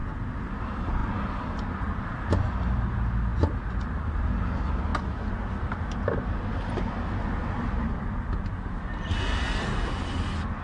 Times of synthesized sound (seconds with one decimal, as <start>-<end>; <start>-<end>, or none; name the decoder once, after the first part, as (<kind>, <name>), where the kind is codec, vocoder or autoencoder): none